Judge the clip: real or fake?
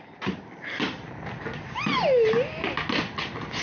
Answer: real